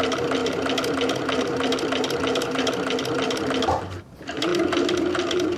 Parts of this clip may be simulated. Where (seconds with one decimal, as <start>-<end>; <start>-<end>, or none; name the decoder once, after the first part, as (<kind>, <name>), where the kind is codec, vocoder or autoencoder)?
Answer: none